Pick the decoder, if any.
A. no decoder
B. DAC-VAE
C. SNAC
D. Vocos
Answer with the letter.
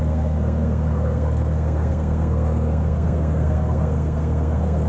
C